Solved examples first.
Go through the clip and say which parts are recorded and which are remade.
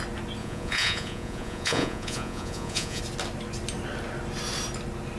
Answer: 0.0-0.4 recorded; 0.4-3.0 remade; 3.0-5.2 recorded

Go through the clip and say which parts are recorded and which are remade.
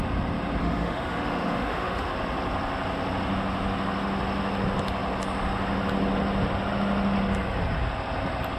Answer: 0.0-0.6 recorded; 0.6-2.1 remade; 2.1-8.6 recorded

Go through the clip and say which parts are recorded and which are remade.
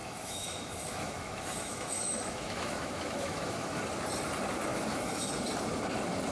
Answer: 0.0-3.8 remade; 3.8-4.7 recorded; 4.7-5.3 remade; 5.3-6.3 recorded